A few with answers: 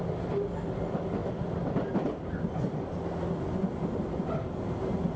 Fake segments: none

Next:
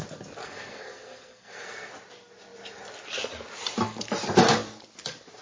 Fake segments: 0.4-1.9 (codec, SNAC)

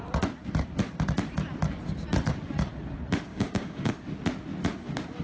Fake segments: 3.3-3.9 (codec, DAC)